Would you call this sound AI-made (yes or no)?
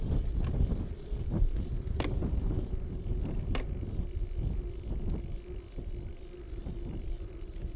no